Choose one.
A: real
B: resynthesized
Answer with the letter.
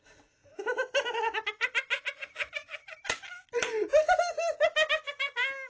A